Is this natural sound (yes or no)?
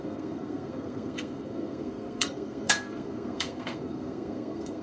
no